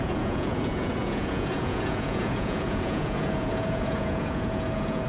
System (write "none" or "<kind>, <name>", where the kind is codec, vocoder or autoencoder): vocoder, Vocos